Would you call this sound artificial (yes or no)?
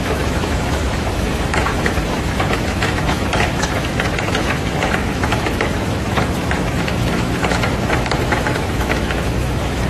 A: yes